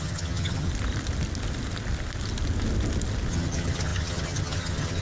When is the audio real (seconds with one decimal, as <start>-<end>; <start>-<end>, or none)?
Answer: 0.7-3.3